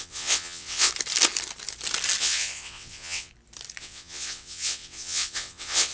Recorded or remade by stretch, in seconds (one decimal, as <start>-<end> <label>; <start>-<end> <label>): 0.0-0.9 remade; 0.9-2.2 recorded; 2.2-3.3 remade; 3.3-3.8 recorded; 3.8-5.9 remade